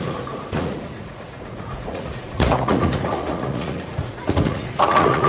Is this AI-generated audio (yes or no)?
yes